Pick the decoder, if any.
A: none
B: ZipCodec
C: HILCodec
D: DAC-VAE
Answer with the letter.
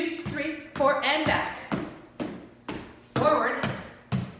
A